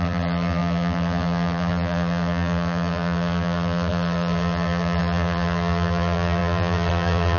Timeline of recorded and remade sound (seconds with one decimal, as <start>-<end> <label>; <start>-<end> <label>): 0.0-7.4 remade